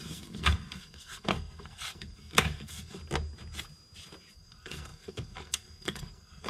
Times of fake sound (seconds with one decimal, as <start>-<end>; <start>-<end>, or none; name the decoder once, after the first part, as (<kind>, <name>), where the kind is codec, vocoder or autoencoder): 0.0-3.0 (codec, SNAC); 4.3-6.5